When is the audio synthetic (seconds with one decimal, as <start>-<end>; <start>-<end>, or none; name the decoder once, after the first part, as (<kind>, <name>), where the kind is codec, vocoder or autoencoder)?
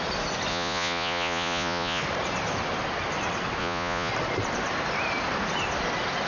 0.5-2.0 (vocoder, Vocos); 3.6-4.1